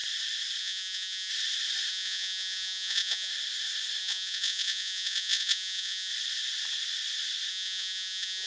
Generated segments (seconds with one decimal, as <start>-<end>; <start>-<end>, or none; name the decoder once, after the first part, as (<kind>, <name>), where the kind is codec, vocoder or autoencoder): 0.6-1.3 (vocoder, Vocos); 1.9-3.3; 4.0-6.1; 7.5-8.5